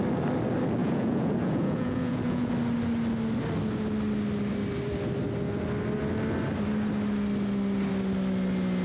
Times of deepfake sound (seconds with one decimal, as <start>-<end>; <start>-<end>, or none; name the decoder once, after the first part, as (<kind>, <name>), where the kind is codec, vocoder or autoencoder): 0.8-2.5 (vocoder, Vocos)